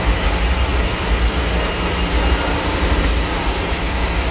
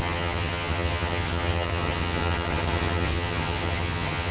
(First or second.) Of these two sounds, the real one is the first